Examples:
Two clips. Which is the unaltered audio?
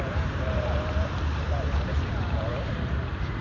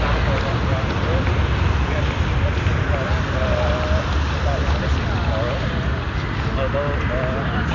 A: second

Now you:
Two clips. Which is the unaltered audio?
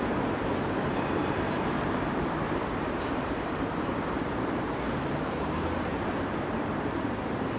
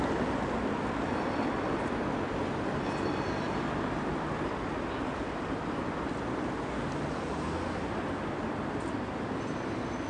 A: second